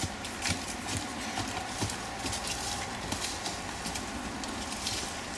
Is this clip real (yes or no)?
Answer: yes